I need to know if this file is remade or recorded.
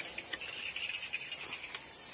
recorded